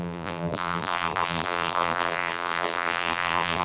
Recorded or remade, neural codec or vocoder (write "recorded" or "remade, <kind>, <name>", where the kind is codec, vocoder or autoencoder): remade, vocoder, BigVGAN v2